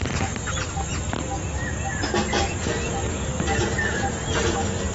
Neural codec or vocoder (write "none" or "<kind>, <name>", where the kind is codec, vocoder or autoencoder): none